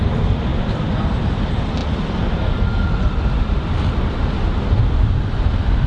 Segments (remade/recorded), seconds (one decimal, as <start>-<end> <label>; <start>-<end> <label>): 0.0-5.9 recorded